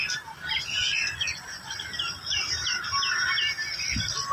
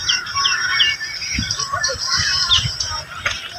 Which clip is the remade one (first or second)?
second